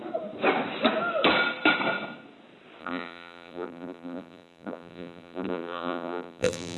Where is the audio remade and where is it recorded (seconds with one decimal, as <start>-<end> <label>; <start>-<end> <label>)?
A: 0.0-2.8 recorded; 2.8-6.8 remade